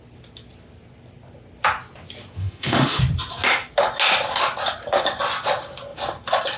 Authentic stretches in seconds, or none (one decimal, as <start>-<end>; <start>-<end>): 0.0-2.4; 3.0-6.6